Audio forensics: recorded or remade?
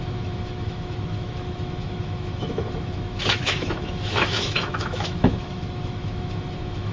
remade